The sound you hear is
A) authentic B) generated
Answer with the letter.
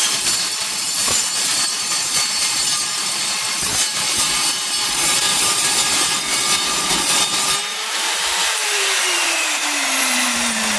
B